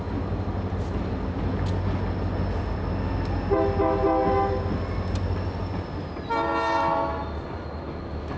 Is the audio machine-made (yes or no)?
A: no